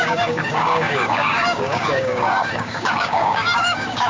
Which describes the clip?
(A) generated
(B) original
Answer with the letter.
A